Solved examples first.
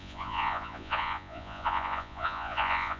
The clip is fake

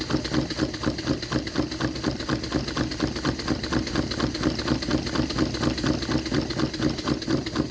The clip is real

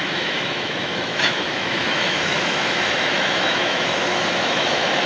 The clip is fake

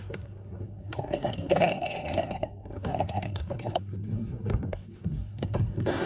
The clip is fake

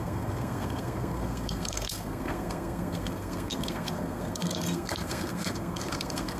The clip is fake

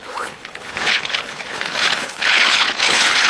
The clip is fake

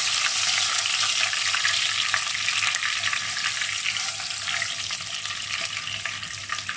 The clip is real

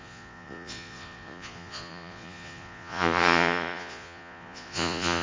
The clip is fake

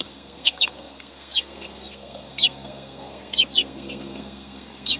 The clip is fake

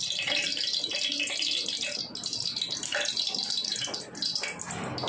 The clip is real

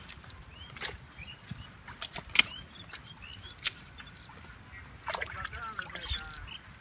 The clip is real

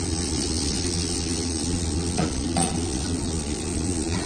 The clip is fake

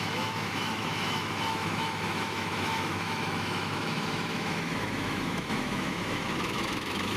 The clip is fake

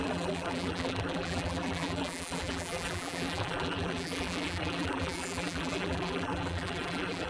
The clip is fake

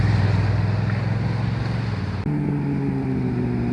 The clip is real